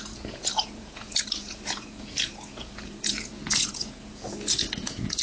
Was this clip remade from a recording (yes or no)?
yes